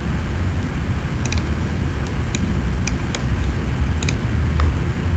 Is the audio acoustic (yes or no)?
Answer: yes